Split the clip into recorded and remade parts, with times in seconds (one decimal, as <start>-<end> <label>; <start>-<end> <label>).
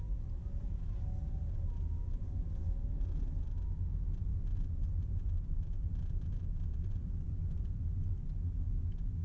0.0-4.3 recorded; 4.3-7.8 remade; 7.8-9.2 recorded